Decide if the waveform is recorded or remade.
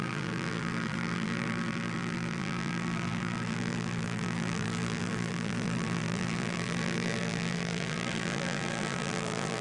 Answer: remade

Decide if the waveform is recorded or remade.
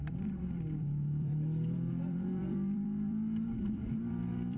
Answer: remade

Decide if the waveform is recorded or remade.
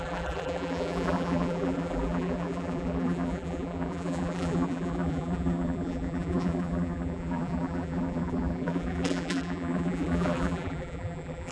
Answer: remade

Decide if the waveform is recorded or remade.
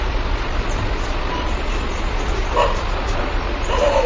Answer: recorded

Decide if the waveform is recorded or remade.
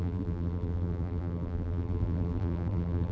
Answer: remade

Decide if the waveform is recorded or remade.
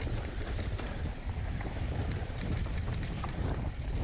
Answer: remade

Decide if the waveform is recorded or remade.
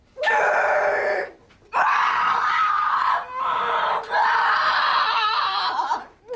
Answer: recorded